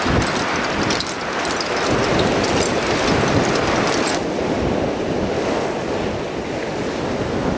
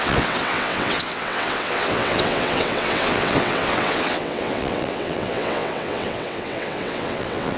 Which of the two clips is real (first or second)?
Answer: first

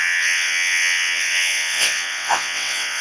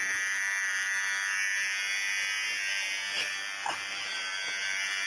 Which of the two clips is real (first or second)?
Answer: second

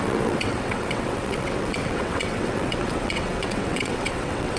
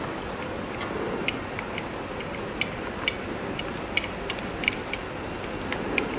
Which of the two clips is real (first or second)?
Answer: second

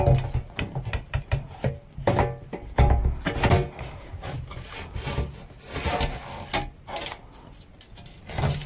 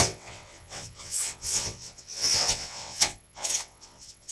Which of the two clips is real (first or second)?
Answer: first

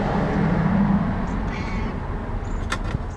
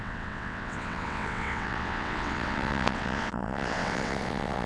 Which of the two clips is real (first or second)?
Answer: first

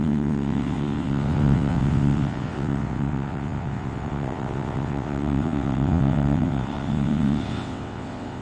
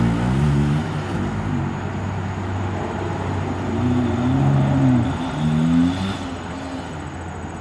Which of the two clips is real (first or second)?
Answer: second